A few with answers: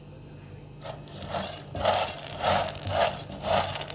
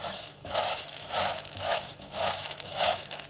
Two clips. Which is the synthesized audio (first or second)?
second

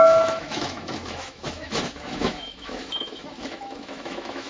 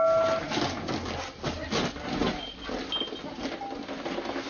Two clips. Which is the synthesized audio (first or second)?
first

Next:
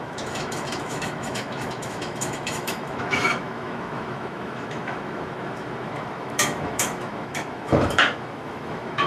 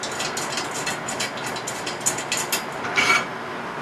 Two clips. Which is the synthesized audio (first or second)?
first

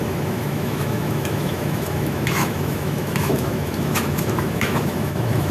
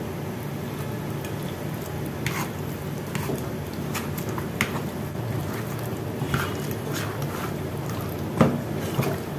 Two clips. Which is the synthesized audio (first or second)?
first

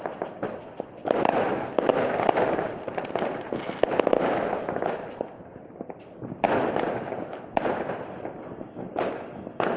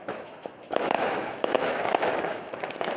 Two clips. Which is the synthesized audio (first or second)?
second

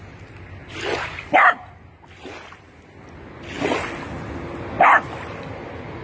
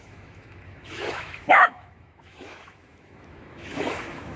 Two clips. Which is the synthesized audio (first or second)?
second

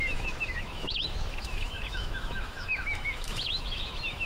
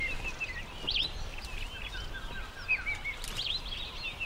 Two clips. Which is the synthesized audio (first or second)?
first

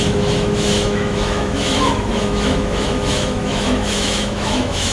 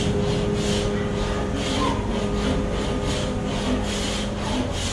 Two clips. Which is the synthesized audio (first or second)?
first